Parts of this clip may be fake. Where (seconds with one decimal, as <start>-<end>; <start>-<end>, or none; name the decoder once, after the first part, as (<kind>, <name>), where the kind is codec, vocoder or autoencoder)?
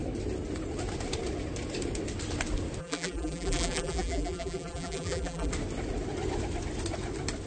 2.8-5.5 (vocoder, BigVGAN v2)